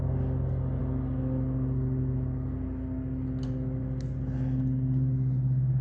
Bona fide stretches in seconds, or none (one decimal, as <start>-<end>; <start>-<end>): 0.0-5.8

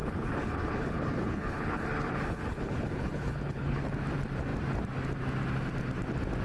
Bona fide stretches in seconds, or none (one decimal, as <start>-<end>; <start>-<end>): 3.8-6.4

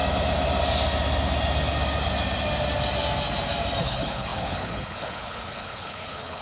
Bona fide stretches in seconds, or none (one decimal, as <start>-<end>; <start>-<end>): 0.0-3.8

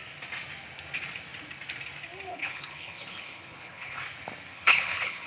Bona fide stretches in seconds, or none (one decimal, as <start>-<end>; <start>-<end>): 0.0-2.3; 4.0-4.5